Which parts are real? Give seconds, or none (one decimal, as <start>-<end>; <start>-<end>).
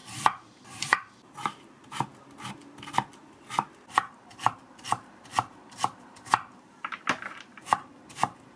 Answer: 2.5-3.2; 4.5-5.3; 7.9-8.6